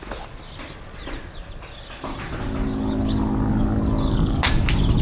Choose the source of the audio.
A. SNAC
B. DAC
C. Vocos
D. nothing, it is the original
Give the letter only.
D